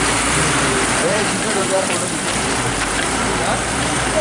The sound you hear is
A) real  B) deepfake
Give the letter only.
B